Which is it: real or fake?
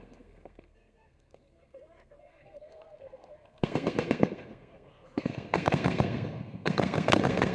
fake